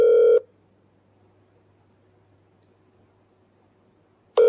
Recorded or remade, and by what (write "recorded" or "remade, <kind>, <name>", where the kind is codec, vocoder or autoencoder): recorded